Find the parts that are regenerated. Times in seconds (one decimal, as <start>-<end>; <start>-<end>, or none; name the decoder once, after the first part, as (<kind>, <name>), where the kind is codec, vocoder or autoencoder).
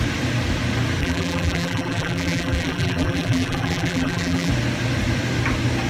1.0-4.5 (vocoder, BigVGAN v2)